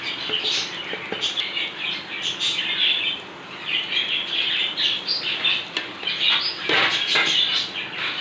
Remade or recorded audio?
recorded